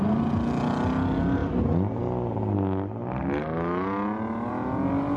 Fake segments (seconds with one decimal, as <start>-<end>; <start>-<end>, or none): none